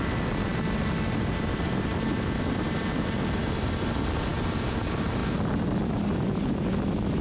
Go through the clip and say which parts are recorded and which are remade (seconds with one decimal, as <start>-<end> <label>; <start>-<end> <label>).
0.0-7.2 recorded